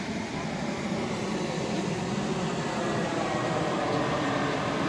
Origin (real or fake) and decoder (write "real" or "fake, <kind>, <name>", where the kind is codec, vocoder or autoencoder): real